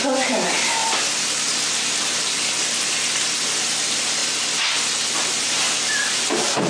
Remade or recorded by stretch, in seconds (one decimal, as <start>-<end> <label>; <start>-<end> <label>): 0.0-0.8 remade; 0.8-3.6 recorded; 3.6-4.2 remade; 4.2-5.4 recorded; 5.4-6.7 remade